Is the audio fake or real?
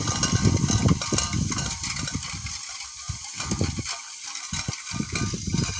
real